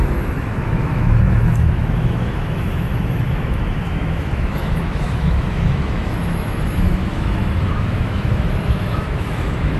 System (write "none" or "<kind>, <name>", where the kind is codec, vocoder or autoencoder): autoencoder, DAC-VAE